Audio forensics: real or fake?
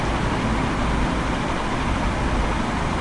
real